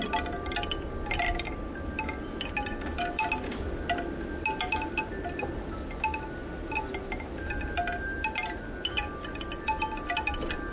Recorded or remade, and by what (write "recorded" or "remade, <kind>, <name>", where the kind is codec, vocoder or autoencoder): recorded